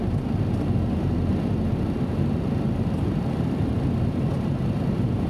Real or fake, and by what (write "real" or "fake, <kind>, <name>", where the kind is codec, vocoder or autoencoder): fake, vocoder, BigVGAN v2